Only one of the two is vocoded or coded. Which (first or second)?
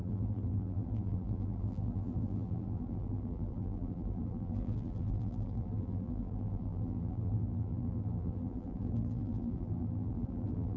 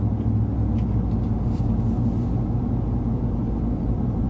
first